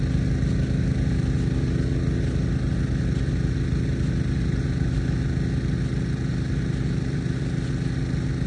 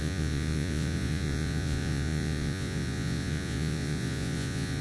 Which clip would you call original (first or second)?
first